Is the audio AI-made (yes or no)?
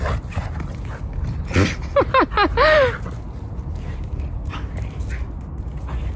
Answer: no